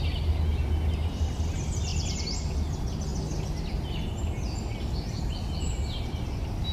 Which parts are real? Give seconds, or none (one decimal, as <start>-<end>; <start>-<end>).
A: 0.0-6.7